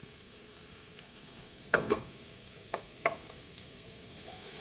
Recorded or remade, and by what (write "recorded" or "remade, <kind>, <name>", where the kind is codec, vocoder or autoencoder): remade, codec, SNAC